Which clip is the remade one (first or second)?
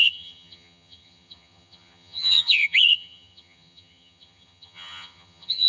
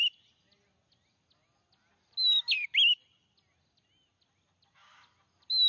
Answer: first